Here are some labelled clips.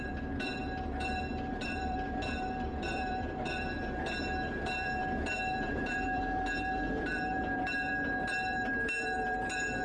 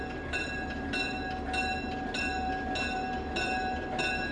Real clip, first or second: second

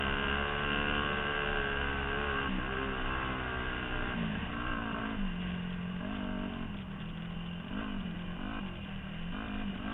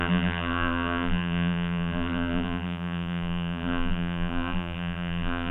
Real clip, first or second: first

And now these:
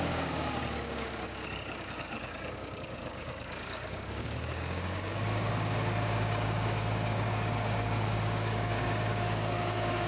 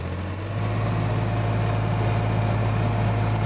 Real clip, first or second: second